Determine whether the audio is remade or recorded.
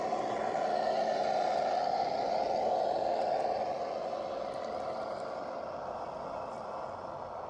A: recorded